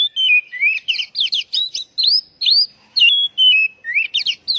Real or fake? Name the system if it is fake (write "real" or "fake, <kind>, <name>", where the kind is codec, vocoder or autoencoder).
real